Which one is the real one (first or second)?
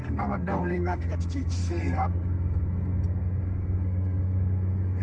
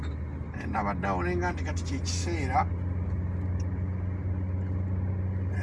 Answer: second